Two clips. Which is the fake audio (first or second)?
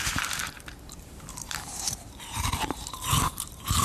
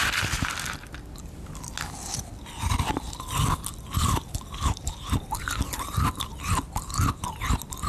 first